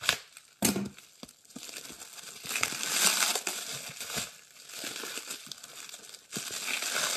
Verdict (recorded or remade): recorded